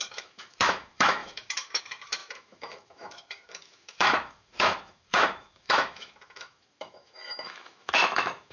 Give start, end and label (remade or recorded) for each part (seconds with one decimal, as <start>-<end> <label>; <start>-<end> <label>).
0.0-8.5 remade